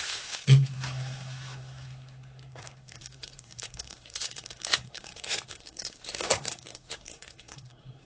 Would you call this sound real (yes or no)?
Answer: no